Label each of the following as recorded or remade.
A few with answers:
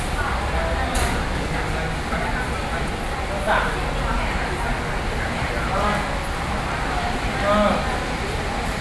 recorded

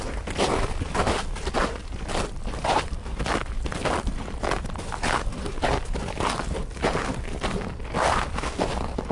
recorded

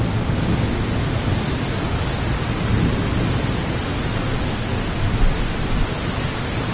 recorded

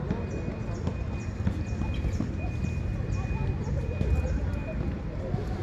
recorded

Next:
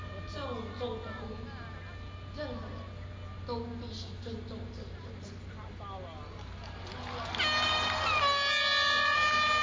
recorded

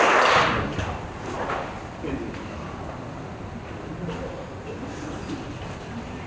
recorded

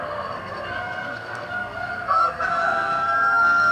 remade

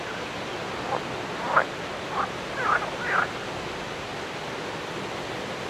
recorded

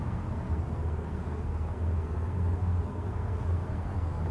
remade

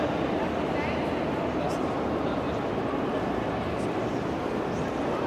recorded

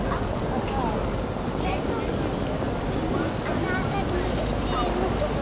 recorded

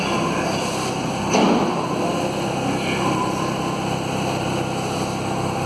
recorded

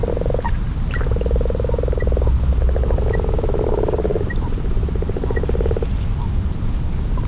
recorded